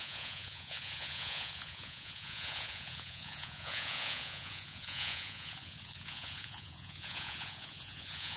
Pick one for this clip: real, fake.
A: fake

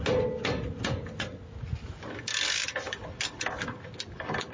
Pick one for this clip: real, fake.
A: real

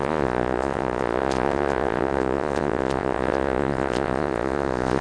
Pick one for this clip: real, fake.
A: fake